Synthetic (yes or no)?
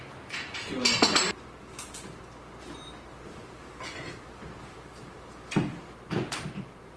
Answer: no